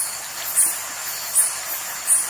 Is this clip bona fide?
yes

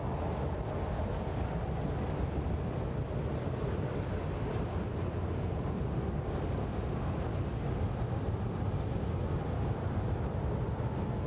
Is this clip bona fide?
yes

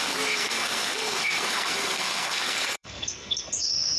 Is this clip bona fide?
no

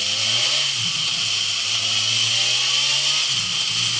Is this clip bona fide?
yes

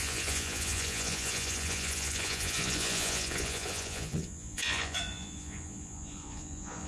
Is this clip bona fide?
no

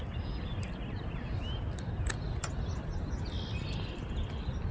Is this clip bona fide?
yes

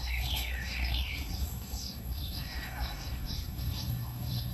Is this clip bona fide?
no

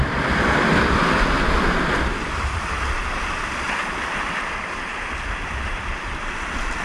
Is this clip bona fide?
yes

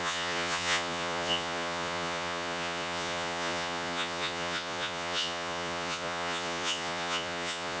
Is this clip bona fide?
no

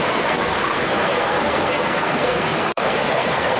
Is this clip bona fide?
no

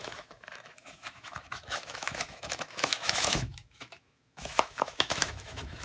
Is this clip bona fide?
no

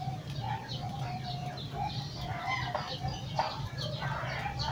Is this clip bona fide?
yes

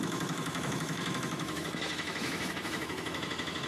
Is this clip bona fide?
no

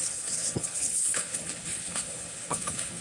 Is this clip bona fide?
no